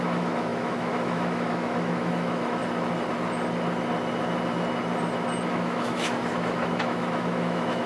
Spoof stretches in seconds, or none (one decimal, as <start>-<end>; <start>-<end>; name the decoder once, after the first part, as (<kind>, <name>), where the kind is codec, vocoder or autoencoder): 0.0-2.6 (autoencoder, DAC-VAE); 5.5-7.9